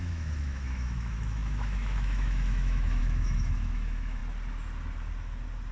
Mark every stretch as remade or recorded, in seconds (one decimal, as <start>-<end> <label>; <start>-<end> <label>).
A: 0.0-4.2 remade; 4.2-5.7 recorded

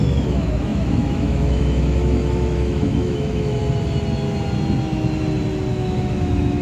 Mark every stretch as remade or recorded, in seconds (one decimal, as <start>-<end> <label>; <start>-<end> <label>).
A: 0.0-3.6 remade; 3.6-5.7 recorded; 5.7-6.6 remade

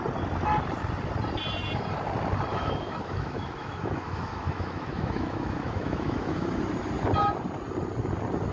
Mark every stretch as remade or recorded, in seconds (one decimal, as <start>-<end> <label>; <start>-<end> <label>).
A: 0.0-2.5 recorded; 2.5-6.6 remade; 6.6-8.5 recorded

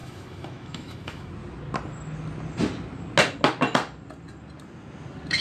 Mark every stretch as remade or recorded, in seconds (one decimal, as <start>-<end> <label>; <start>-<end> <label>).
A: 0.0-1.3 remade; 1.3-5.4 recorded

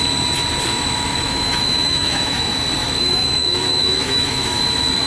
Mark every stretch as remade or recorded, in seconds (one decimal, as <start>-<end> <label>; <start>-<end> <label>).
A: 0.0-0.7 recorded; 0.7-2.4 remade; 2.4-2.8 recorded; 2.8-4.6 remade; 4.6-5.1 recorded